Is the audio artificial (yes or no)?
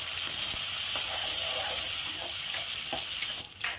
no